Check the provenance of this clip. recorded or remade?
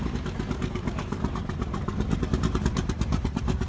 remade